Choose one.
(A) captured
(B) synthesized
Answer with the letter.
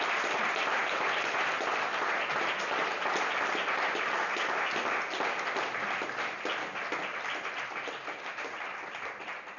A